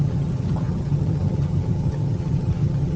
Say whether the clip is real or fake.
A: fake